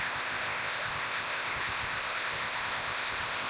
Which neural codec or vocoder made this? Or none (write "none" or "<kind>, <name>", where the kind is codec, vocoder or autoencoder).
codec, ZipCodec